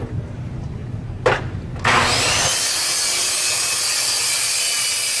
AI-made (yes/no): no